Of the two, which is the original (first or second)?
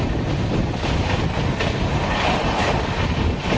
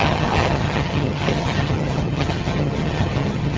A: first